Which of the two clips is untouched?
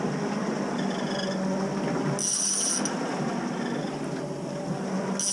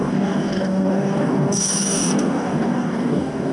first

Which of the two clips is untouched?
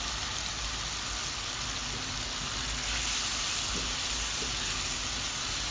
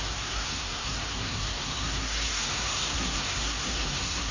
first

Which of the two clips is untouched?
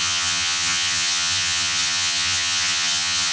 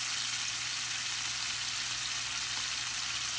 second